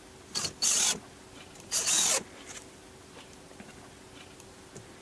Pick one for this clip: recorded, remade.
recorded